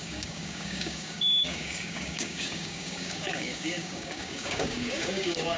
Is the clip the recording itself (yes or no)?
no